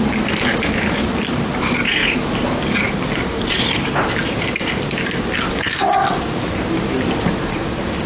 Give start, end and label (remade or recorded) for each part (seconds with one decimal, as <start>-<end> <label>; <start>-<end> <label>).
0.0-8.1 recorded